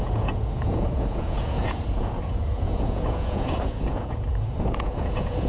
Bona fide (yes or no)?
no